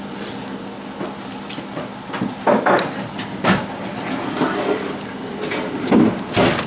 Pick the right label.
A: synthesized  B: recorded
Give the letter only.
B